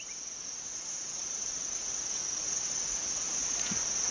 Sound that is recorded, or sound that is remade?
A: remade